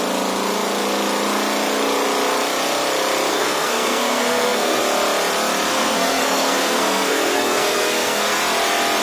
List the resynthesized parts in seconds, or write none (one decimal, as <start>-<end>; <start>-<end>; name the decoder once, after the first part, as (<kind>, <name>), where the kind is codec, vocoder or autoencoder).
3.3-4.8 (codec, SNAC); 5.7-8.4